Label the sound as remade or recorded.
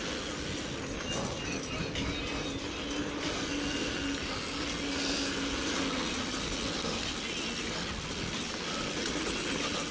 recorded